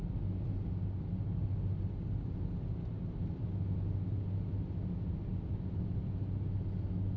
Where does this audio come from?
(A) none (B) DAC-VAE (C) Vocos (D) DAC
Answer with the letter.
A